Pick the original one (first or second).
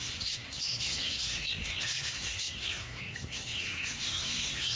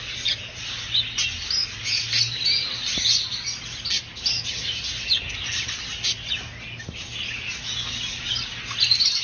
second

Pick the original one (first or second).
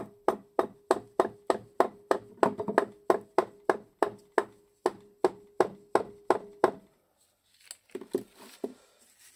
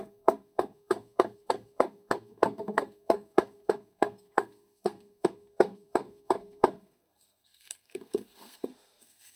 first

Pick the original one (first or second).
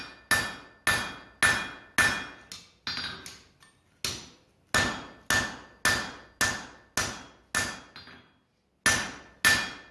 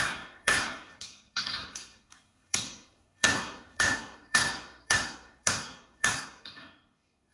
first